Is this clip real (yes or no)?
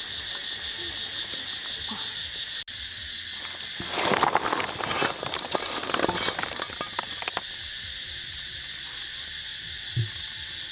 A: yes